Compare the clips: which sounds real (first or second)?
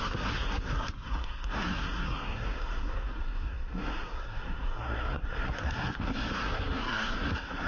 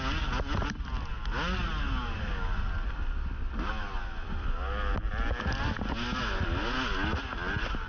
second